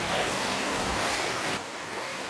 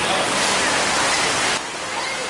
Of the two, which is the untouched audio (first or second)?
second